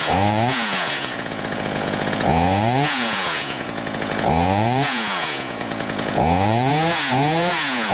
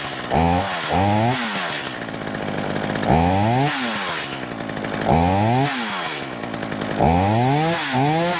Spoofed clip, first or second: first